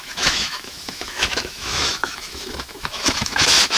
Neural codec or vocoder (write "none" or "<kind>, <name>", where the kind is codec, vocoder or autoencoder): autoencoder, DAC-VAE